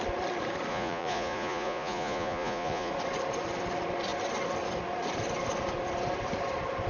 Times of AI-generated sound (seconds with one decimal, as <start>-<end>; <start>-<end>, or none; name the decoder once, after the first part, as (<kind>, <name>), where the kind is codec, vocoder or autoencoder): 0.7-2.9 (vocoder, Vocos)